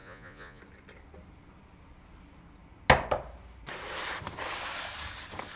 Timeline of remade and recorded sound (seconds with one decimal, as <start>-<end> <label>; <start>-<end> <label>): 0.0-0.6 remade; 0.6-5.6 recorded